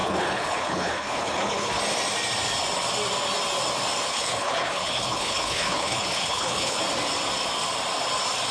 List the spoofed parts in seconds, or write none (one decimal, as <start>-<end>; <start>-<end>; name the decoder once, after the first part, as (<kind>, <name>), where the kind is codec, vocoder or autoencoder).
0.0-1.8 (codec, HILCodec); 4.1-6.8